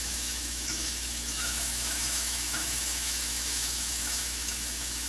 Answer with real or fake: fake